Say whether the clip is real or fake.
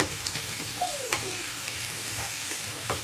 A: fake